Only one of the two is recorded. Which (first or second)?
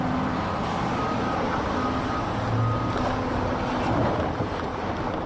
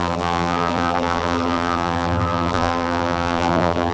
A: first